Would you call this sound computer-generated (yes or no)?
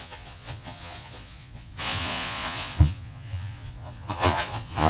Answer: yes